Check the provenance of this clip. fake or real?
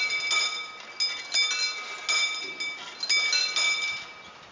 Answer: real